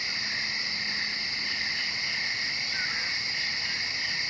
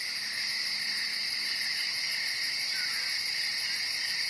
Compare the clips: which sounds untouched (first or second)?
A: first